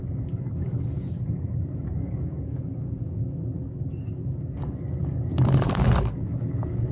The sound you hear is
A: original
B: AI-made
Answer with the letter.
B